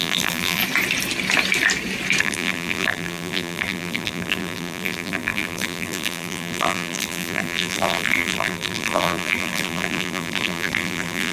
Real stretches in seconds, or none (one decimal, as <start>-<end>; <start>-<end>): 0.6-2.2